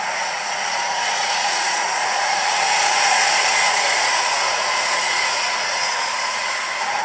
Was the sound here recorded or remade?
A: remade